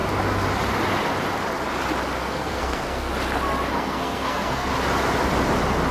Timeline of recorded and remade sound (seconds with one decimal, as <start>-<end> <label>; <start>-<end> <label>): 0.0-2.2 recorded; 2.2-3.1 remade; 3.1-3.7 recorded; 3.7-4.7 remade; 4.7-5.9 recorded